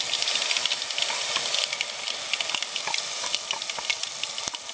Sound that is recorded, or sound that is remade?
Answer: recorded